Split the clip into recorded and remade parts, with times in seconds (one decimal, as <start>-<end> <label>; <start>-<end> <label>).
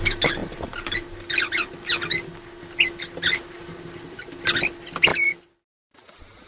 0.0-6.5 recorded